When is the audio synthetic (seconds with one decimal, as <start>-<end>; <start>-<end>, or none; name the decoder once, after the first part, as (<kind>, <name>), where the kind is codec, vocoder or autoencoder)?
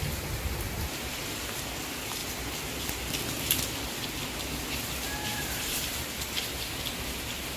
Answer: 5.3-6.5 (vocoder, BigVGAN v2)